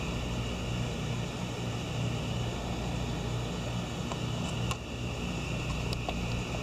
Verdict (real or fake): real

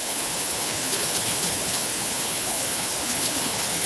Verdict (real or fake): fake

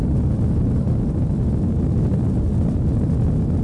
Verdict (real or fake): real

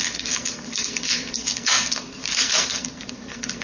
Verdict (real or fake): fake